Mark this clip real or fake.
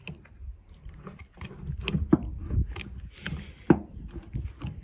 real